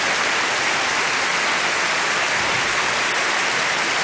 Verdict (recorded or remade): recorded